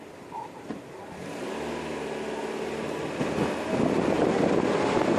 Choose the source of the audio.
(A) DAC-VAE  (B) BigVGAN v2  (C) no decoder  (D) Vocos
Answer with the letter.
C